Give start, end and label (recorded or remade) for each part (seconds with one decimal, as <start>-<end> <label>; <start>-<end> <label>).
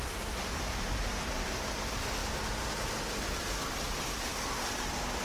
0.0-5.2 recorded